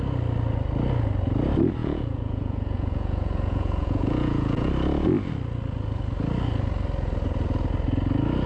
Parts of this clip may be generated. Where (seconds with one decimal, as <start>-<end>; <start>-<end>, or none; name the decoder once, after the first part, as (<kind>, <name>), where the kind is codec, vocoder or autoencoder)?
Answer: 1.8-4.7 (vocoder, Vocos)